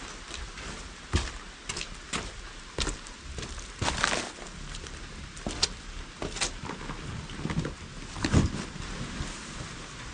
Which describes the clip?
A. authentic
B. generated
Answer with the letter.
A